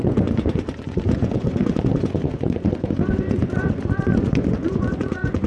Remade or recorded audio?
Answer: remade